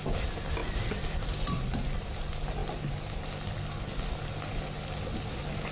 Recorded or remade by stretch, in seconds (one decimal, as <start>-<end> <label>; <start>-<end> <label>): 0.0-5.7 recorded